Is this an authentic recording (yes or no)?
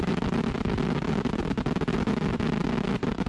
yes